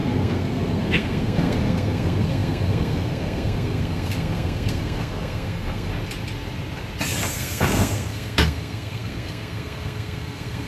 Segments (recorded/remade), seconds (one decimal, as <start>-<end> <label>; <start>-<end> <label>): 0.0-5.9 remade; 5.9-7.3 recorded; 7.3-10.7 remade